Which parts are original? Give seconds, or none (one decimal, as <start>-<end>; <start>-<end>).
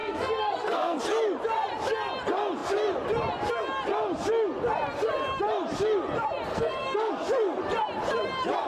1.0-6.5; 7.1-8.7